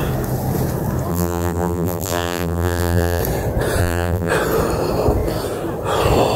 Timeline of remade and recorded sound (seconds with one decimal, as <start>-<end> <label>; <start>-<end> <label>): 0.0-1.1 recorded; 1.1-3.2 remade; 3.2-3.8 recorded; 3.8-4.3 remade; 4.3-6.4 recorded